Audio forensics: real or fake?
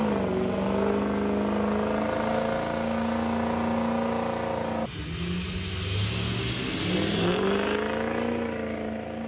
real